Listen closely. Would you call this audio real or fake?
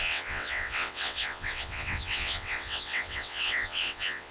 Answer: fake